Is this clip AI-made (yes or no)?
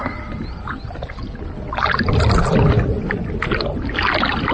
no